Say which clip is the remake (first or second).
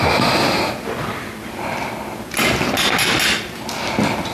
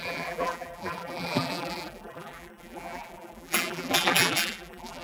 second